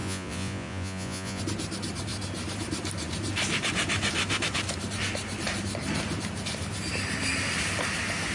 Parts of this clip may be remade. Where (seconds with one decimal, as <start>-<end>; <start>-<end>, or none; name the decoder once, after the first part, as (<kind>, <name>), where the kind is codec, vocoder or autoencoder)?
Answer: 0.0-1.4 (vocoder, Vocos)